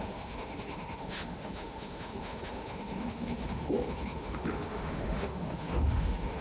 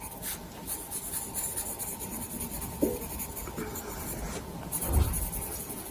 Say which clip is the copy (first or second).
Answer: first